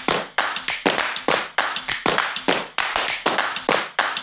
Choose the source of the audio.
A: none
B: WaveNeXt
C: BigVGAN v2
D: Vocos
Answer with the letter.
A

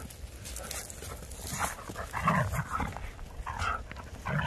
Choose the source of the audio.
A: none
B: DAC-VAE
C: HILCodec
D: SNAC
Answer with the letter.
A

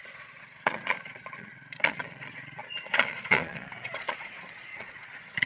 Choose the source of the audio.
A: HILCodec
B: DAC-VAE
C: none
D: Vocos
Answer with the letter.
D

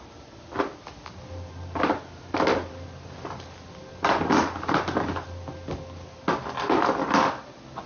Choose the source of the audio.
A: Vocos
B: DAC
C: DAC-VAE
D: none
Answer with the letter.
D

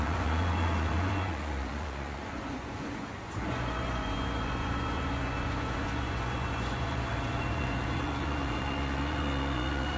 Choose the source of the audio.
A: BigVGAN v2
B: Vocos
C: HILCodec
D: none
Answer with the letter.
B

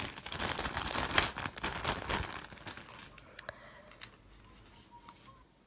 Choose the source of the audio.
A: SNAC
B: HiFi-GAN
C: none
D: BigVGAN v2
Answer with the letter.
C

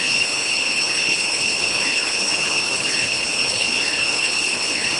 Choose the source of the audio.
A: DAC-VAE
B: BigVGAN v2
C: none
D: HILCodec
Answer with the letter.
D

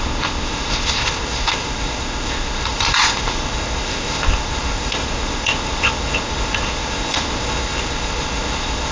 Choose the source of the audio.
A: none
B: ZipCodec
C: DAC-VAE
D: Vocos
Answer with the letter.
B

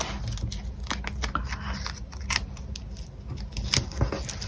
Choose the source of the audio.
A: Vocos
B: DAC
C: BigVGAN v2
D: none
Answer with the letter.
D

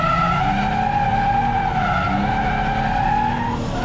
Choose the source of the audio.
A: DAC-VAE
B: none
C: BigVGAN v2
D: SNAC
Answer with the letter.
B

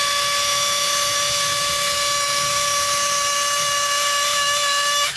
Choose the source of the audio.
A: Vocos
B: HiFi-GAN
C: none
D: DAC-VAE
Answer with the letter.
D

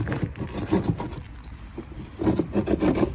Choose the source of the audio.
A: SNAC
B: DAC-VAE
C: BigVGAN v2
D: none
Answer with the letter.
D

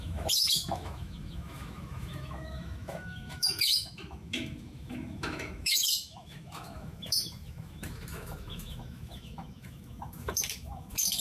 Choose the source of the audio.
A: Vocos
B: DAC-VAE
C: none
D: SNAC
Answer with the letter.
B